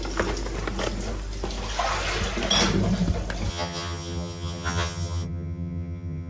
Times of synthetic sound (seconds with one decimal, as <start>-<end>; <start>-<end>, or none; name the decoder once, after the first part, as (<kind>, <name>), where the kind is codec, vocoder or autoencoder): 3.5-6.3 (vocoder, HiFi-GAN)